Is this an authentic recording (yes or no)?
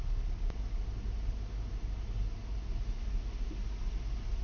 yes